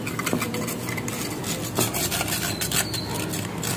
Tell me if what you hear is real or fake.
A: real